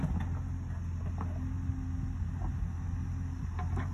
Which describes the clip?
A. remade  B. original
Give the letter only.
B